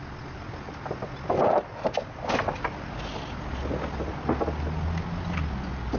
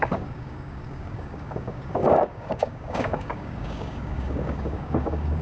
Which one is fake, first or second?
second